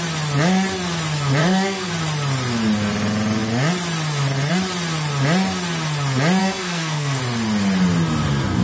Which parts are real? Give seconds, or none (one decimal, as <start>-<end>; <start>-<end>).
0.0-1.4; 1.9-6.4; 7.2-8.6